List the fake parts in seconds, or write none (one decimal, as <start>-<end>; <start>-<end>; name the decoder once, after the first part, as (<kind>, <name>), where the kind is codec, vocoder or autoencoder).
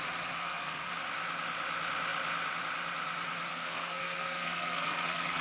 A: 0.4-0.9 (codec, SNAC); 3.5-5.4